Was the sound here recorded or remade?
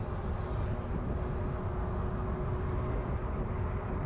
recorded